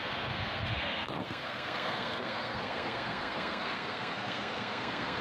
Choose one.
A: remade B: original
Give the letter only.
A